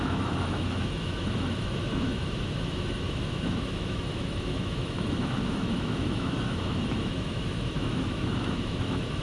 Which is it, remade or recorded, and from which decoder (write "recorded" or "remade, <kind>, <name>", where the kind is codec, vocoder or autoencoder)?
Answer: remade, autoencoder, DAC-VAE